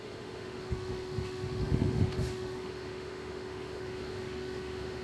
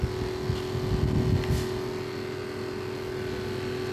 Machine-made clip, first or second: first